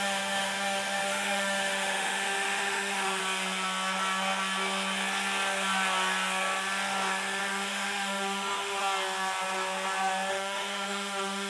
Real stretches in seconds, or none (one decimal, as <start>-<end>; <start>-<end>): 3.2-7.4; 8.8-10.3